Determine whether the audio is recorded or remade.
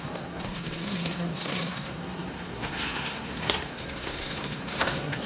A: remade